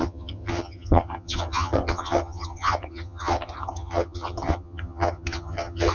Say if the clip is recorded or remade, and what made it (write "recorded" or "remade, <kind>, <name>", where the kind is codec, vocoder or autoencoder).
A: remade, vocoder, HiFi-GAN